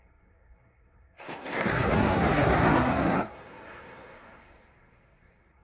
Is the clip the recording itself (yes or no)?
no